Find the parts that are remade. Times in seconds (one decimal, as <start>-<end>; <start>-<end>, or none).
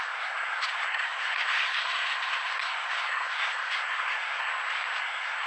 0.0-4.5; 5.0-5.5